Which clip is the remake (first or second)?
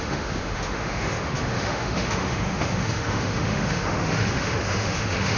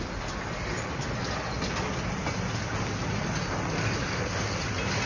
first